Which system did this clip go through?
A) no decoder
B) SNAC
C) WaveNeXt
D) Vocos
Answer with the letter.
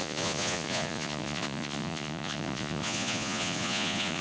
D